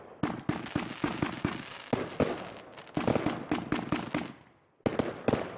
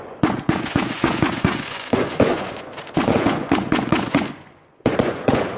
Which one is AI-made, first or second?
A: second